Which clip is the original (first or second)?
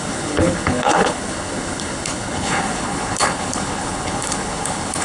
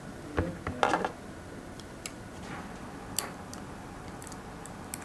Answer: second